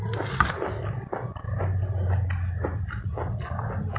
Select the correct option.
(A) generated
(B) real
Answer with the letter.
B